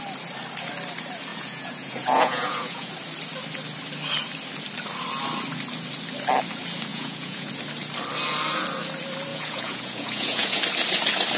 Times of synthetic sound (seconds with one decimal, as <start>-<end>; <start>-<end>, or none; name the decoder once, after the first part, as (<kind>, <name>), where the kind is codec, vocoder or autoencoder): 1.3-2.9 (vocoder, Vocos); 6.9-7.5; 9.3-10.6